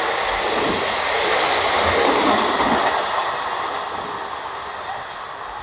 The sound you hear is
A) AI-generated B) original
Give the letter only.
B